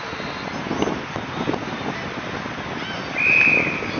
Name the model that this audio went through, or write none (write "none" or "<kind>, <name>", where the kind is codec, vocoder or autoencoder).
none